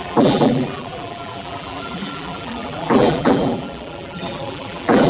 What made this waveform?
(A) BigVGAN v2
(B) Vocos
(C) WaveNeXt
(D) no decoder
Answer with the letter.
A